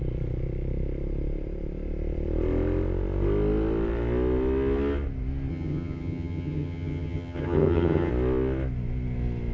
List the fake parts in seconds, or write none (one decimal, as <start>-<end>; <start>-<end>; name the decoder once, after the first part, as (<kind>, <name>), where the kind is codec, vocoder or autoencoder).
5.5-8.1 (vocoder, HiFi-GAN)